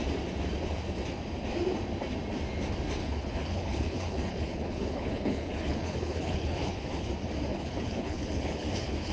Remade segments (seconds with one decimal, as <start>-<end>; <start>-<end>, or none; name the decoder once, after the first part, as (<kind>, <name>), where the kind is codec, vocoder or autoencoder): 3.0-7.1 (codec, HILCodec); 7.5-9.1